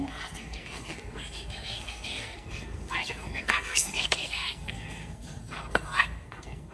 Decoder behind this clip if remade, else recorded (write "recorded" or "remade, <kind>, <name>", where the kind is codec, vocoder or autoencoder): remade, codec, SNAC